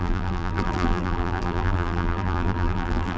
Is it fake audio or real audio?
fake